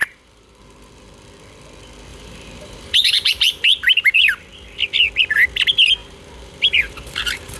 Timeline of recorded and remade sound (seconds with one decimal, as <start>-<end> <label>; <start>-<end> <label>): 0.0-0.6 remade; 0.6-2.1 recorded; 2.1-4.4 remade; 4.4-6.0 recorded; 6.0-7.6 remade